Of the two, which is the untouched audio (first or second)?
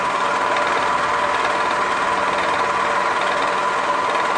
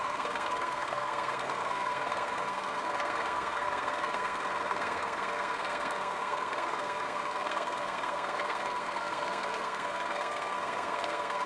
first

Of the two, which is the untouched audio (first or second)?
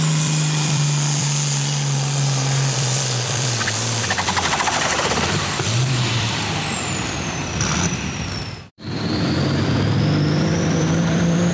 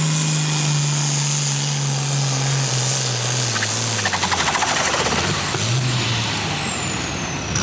second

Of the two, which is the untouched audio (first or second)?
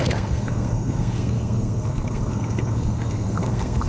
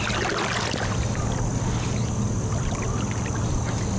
second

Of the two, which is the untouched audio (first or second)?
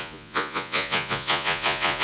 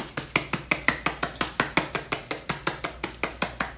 second